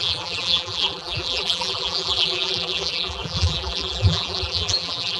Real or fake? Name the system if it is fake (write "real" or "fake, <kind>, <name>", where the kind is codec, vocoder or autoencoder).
fake, vocoder, BigVGAN v2